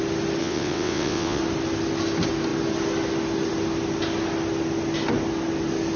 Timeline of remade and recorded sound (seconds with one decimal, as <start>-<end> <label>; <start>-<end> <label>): 0.0-0.4 recorded; 0.4-1.4 remade; 1.4-6.0 recorded